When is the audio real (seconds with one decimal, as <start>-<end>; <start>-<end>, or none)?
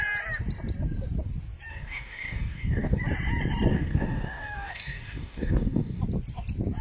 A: 0.0-1.7; 3.0-3.7; 6.0-6.8